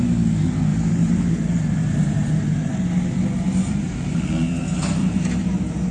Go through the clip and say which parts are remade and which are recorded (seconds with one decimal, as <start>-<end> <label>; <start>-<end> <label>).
0.0-0.7 recorded; 0.7-4.2 remade; 4.2-5.0 recorded; 5.0-5.9 remade